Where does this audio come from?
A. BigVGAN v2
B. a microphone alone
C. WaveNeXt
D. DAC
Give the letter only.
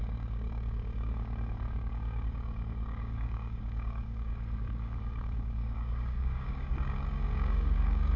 D